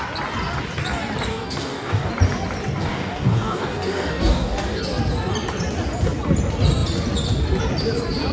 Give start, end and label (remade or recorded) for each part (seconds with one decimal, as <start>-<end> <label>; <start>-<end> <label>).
0.0-1.3 recorded; 1.3-2.1 remade; 2.1-2.8 recorded; 2.8-4.8 remade; 4.8-8.3 recorded